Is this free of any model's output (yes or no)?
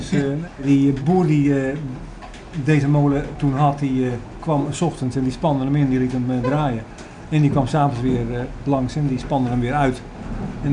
yes